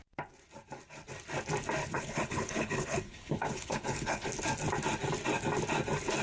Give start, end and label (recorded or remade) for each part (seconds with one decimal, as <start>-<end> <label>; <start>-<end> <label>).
0.0-1.8 recorded; 1.8-4.3 remade; 4.3-6.2 recorded